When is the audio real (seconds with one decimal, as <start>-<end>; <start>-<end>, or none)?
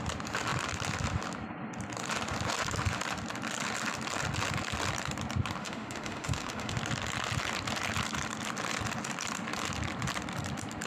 0.0-5.6; 6.8-10.9